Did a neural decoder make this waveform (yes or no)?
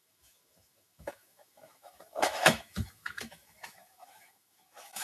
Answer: yes